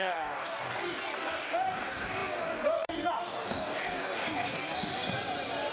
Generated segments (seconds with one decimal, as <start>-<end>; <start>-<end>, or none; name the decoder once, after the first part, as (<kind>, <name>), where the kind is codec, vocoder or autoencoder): 0.0-4.9 (codec, DAC)